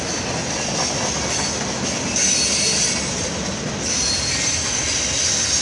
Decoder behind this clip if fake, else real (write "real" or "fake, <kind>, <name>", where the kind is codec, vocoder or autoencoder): real